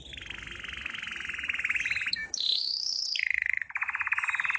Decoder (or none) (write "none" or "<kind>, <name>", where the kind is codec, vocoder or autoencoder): none